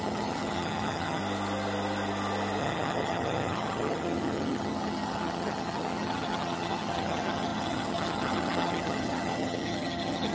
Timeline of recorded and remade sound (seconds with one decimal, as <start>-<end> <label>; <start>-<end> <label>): 0.0-1.2 remade; 1.2-2.6 recorded; 2.6-10.3 remade